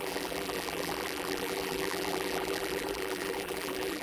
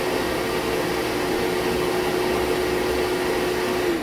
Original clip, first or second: second